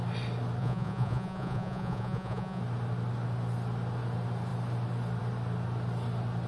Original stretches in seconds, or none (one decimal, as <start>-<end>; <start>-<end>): 0.0-0.6; 2.6-6.5